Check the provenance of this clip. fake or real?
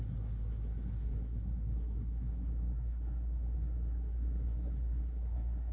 fake